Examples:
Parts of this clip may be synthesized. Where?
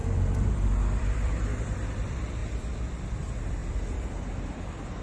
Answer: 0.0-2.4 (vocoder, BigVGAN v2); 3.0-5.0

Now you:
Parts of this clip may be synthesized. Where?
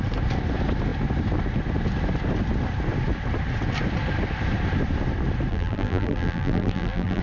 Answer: 5.5-7.2 (vocoder, BigVGAN v2)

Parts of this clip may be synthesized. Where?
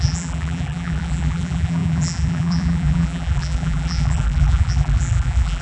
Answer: 0.0-5.6 (vocoder, BigVGAN v2)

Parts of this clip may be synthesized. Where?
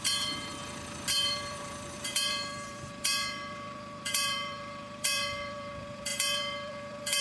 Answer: 0.0-0.6 (vocoder, BigVGAN v2); 1.1-7.2